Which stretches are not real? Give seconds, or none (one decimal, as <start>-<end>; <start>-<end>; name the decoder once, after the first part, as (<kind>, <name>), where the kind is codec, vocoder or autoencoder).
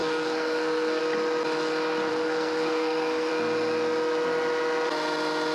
0.0-1.0 (codec, SNAC); 2.1-3.3